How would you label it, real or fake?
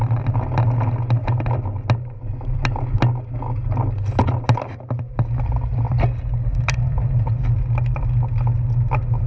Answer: real